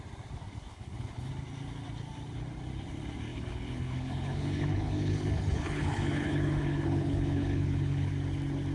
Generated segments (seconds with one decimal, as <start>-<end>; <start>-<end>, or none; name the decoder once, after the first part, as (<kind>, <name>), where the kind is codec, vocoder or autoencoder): 0.7-1.3 (codec, HILCodec); 3.3-8.1